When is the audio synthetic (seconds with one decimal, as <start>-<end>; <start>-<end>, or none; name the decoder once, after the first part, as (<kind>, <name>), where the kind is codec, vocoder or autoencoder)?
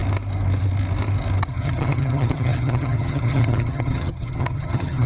1.4-5.1 (vocoder, HiFi-GAN)